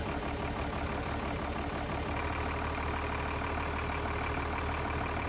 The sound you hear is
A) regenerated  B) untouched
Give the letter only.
B